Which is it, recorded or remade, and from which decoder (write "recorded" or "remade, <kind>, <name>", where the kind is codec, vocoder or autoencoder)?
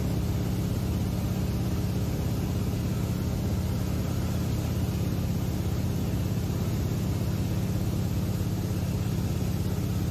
recorded